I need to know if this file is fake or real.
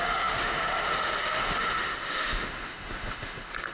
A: fake